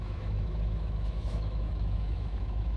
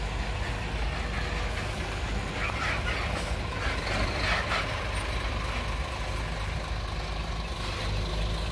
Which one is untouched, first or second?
second